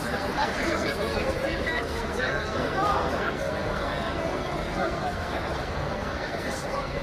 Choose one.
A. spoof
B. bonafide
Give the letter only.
A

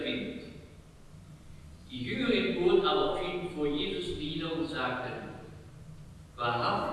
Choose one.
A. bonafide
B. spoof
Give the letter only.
A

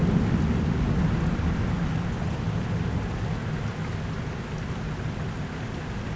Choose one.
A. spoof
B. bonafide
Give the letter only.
B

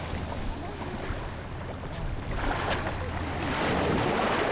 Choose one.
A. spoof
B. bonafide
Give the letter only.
B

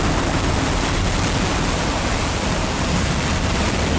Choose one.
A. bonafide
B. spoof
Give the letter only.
B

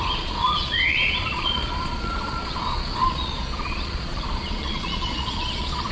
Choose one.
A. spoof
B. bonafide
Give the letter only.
A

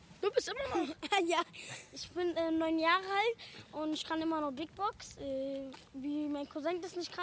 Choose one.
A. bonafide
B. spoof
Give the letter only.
A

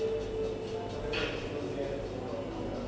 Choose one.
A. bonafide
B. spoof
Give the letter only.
A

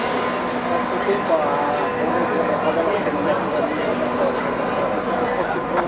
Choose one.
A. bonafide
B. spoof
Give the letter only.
A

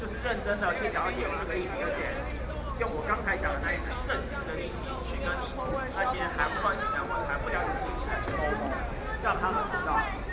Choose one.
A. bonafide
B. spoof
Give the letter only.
B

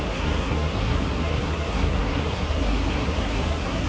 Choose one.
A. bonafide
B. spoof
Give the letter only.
B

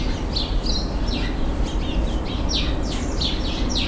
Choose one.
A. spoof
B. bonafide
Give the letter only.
B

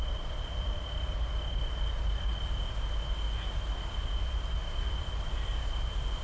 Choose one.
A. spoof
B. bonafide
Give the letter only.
B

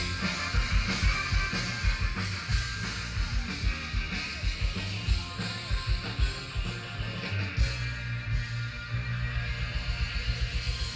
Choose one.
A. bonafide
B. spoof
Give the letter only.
A